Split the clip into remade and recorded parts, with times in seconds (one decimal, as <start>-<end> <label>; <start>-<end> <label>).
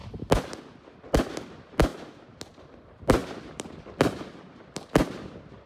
0.0-0.6 remade; 0.6-3.2 recorded; 3.2-5.3 remade; 5.3-5.7 recorded